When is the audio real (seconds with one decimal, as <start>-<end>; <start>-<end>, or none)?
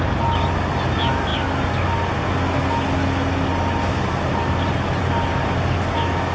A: 0.0-6.3